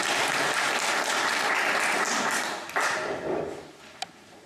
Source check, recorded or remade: recorded